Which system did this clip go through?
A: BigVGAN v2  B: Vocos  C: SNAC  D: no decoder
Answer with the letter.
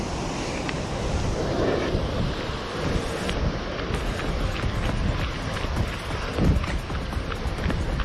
D